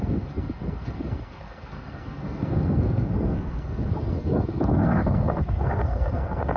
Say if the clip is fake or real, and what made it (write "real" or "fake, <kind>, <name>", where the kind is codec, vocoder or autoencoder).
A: fake, codec, SNAC